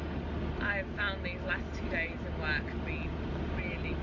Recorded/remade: recorded